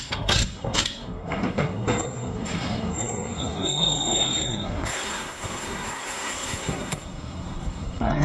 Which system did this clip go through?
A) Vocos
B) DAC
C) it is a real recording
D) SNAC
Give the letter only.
D